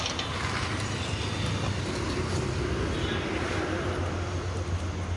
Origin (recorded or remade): recorded